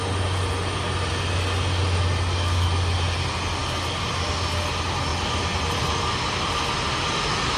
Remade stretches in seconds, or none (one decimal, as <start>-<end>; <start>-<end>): 5.1-6.0